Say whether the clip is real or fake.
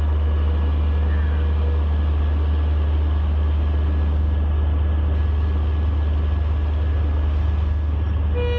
real